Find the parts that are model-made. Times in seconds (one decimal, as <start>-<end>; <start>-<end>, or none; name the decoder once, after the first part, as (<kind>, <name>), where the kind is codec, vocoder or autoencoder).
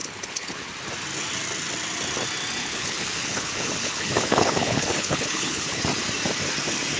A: 0.0-0.7 (codec, HILCodec); 2.6-5.8